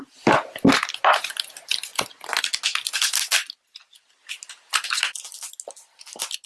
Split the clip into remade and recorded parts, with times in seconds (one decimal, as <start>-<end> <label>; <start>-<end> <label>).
0.0-6.5 recorded